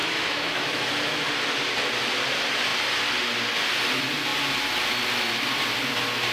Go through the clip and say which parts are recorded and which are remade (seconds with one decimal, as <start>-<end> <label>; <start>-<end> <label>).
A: 0.0-0.9 remade; 0.9-6.3 recorded

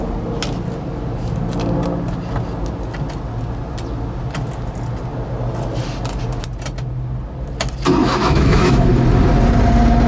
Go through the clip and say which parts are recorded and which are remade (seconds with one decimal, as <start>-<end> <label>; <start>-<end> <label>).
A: 0.0-8.0 recorded; 8.0-8.9 remade; 8.9-10.1 recorded

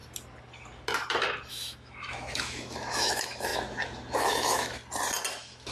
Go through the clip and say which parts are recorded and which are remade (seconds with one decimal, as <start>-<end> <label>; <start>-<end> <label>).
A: 0.0-1.5 recorded; 1.5-4.8 remade; 4.8-5.3 recorded; 5.3-5.7 remade

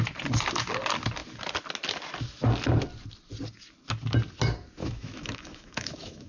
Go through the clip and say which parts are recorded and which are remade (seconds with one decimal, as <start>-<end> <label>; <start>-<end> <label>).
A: 0.0-4.8 recorded; 4.8-6.3 remade

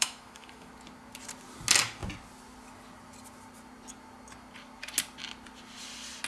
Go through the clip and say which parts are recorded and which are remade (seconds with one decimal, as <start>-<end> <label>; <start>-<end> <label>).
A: 0.0-0.7 remade; 0.7-6.3 recorded

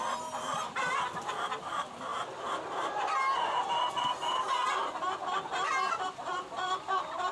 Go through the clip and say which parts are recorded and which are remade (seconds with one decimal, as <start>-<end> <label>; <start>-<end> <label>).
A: 0.0-7.3 recorded

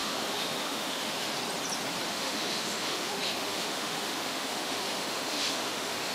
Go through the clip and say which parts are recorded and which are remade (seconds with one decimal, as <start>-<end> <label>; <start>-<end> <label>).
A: 0.0-1.3 remade; 1.3-2.1 recorded; 2.1-6.1 remade

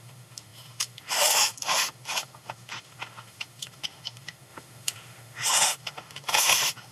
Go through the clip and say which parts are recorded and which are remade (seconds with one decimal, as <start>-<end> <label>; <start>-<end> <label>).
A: 0.0-6.9 remade